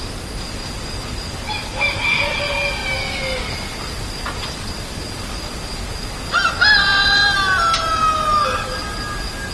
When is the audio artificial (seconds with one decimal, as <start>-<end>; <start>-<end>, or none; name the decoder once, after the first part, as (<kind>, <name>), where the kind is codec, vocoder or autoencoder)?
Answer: none